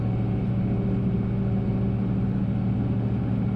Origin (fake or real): real